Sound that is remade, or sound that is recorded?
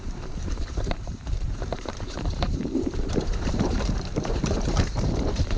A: remade